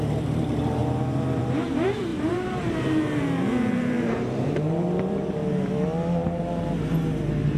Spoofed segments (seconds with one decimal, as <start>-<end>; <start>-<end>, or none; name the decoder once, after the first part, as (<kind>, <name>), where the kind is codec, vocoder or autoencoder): 0.0-0.8 (vocoder, BigVGAN v2); 1.4-5.4